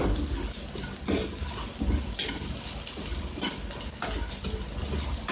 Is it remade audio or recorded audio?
recorded